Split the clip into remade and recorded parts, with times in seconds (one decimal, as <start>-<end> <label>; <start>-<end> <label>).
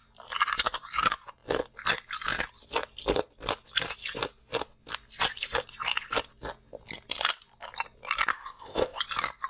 0.0-8.3 recorded; 8.3-9.0 remade; 9.0-9.5 recorded